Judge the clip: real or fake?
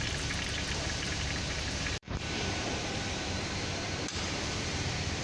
fake